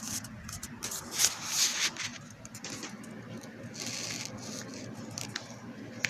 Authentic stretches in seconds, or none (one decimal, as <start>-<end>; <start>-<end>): 0.0-6.1